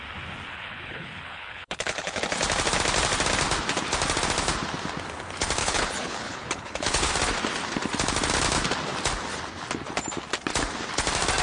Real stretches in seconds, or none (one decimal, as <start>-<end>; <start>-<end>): 0.0-0.5; 2.2-5.6; 7.1-11.4